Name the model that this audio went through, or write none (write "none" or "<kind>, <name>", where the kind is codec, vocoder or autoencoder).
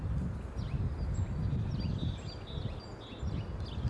none